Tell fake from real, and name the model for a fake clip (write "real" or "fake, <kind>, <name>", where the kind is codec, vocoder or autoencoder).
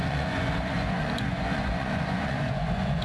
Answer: fake, vocoder, Vocos